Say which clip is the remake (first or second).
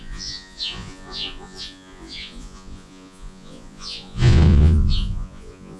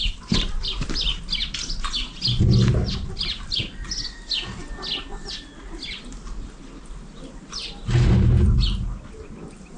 first